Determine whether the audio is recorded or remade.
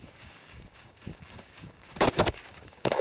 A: remade